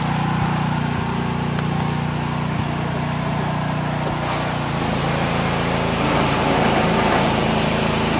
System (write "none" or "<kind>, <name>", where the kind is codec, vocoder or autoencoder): none